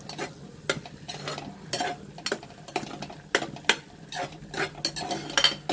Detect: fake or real real